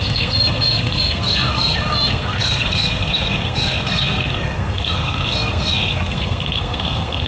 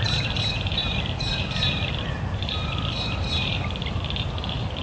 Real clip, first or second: second